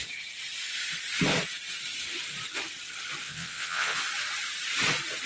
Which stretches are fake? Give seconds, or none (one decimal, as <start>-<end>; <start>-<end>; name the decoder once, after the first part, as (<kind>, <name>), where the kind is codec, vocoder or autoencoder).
3.2-4.0 (vocoder, WaveNeXt)